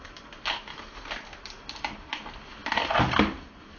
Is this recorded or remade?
recorded